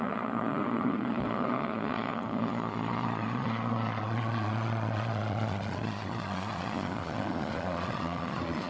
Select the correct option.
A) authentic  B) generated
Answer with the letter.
B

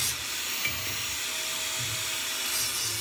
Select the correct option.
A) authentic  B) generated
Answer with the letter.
A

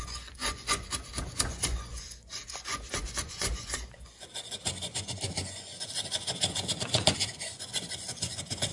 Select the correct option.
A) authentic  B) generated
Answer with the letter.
B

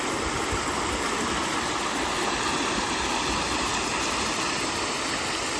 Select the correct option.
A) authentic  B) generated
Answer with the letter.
A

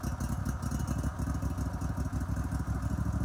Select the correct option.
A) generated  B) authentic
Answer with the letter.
B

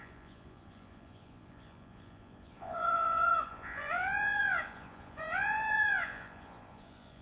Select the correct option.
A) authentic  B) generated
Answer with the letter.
B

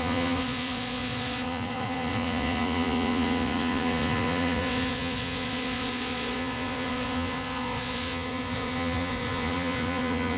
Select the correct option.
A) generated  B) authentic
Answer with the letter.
A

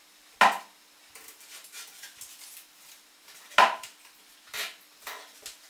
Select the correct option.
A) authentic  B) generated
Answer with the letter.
A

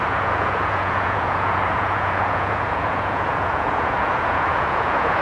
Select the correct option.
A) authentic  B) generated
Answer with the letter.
B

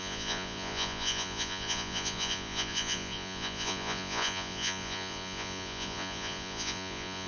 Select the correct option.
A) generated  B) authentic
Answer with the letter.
A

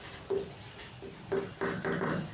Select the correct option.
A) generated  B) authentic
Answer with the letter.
B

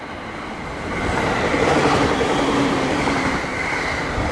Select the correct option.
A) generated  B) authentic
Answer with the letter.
B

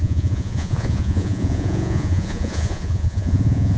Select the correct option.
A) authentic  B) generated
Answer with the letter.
B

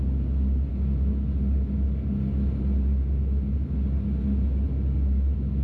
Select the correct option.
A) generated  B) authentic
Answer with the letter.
B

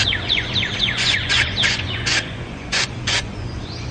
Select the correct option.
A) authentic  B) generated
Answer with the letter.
B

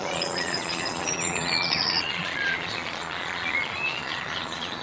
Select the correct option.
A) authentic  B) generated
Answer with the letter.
B